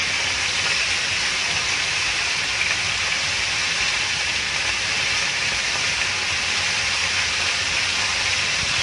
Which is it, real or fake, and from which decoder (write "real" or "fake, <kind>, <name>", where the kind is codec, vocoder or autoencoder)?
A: real